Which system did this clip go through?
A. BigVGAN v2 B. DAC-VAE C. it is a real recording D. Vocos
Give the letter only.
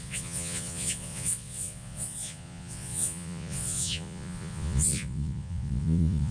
D